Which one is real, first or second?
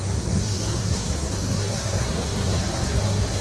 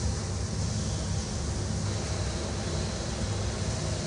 second